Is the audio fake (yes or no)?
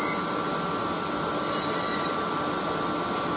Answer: no